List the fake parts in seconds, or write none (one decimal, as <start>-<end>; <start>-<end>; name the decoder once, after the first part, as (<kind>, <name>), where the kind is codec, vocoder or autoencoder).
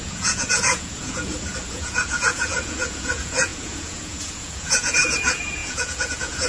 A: 0.0-6.5 (vocoder, Vocos)